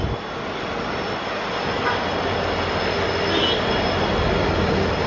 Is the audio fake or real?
real